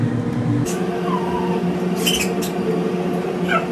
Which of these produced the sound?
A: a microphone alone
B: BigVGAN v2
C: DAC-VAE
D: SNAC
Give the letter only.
A